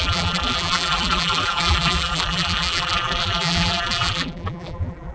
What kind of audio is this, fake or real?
fake